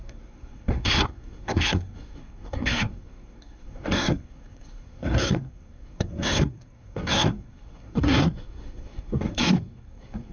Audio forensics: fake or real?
fake